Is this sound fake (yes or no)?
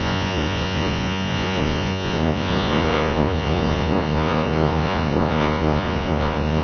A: yes